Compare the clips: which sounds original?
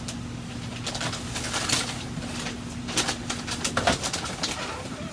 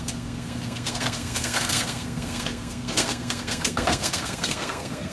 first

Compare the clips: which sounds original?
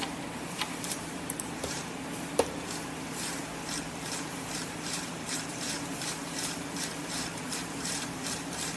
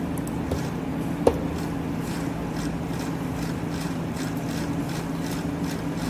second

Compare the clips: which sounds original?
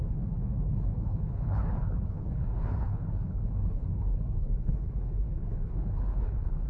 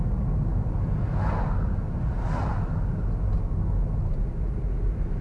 second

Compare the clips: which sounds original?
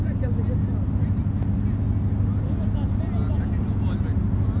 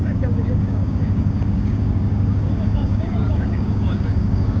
first